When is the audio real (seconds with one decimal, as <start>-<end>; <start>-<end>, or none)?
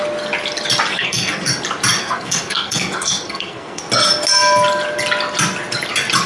0.0-0.9; 1.5-2.0; 3.8-6.3